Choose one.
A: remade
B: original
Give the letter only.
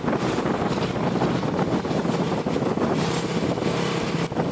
B